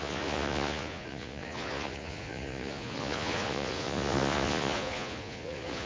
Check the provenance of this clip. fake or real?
fake